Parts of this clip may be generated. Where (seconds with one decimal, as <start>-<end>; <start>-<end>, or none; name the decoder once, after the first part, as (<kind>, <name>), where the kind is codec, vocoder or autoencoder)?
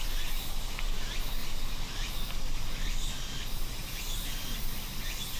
none